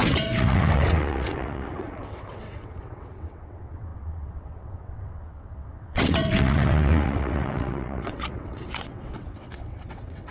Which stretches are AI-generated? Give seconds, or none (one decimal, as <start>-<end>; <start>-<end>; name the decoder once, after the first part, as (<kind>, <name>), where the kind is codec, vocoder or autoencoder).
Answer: 0.0-10.3 (vocoder, WaveNeXt)